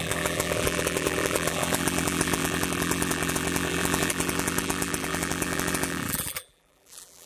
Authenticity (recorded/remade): remade